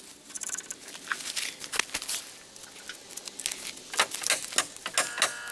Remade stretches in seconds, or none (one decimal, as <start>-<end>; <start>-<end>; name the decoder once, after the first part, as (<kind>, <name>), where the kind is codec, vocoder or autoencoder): none